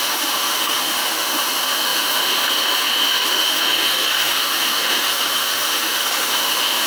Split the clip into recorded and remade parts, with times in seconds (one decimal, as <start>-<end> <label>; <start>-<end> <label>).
0.0-6.9 remade